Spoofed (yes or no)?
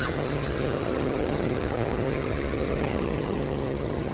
yes